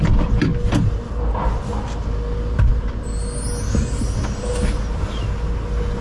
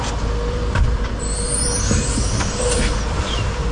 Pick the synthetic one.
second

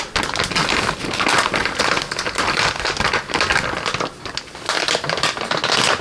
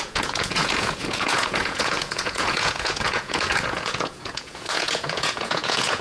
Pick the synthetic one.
second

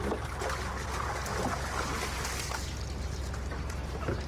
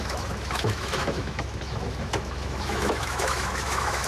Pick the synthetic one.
second